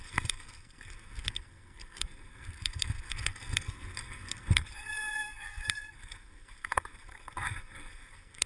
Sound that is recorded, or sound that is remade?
remade